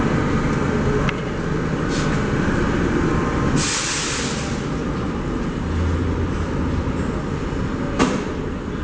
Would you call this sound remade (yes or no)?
no